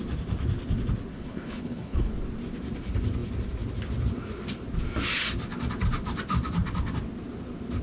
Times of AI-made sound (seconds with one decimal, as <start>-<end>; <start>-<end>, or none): 1.1-2.1